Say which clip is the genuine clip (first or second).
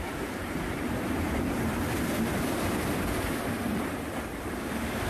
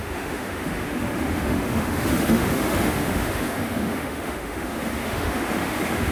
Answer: first